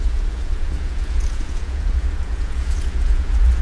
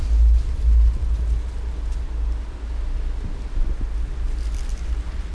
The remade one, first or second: first